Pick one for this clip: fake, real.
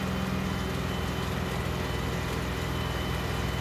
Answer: real